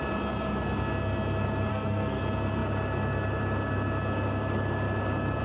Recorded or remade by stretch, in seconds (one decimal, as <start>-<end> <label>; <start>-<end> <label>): 0.0-1.7 recorded; 1.7-2.2 remade; 2.2-5.4 recorded